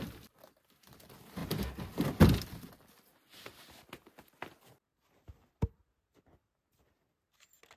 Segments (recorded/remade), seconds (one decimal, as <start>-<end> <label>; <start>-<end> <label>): 0.0-7.8 recorded